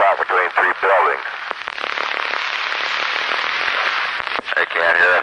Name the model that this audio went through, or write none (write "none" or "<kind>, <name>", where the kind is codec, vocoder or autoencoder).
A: vocoder, BigVGAN v2